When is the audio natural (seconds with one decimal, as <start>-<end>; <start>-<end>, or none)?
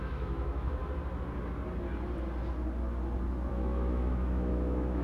0.8-3.5